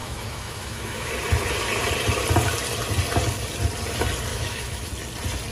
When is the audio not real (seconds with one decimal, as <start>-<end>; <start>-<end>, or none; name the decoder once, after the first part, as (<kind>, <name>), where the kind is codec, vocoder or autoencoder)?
0.0-1.1 (autoencoder, DAC-VAE); 4.3-4.9

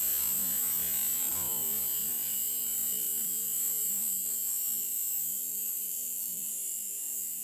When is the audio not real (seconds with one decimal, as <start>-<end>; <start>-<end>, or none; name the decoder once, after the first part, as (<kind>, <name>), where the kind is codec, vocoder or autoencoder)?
5.5-6.5 (vocoder, BigVGAN v2)

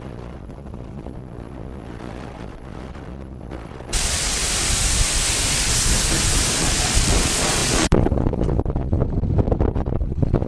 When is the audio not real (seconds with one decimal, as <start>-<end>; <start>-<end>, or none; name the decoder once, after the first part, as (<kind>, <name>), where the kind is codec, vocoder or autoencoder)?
0.0-4.4 (vocoder, Vocos); 6.6-9.0; 9.7-10.5

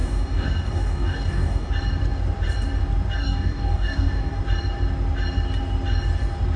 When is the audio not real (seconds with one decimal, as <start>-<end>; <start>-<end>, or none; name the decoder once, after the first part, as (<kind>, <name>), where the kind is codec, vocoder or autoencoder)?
0.0-1.7 (codec, DAC); 3.2-4.4

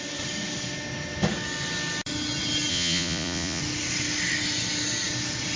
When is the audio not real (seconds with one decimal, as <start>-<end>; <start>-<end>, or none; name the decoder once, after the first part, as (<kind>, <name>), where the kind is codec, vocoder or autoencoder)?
2.7-3.6 (vocoder, Vocos)